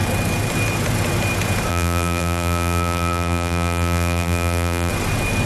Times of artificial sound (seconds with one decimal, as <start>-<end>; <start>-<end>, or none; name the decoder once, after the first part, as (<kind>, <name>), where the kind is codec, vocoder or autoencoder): 1.7-4.9 (vocoder, BigVGAN v2)